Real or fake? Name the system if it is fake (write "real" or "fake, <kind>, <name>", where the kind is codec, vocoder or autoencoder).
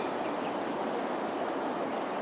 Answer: real